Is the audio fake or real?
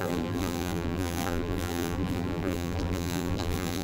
fake